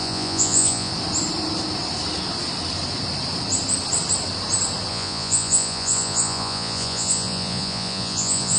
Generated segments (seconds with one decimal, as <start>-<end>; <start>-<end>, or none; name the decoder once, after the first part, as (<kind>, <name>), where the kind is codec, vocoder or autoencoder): 0.0-0.9 (vocoder, Vocos); 4.9-8.6